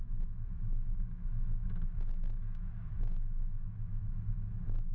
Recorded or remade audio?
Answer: remade